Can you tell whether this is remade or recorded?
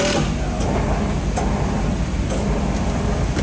recorded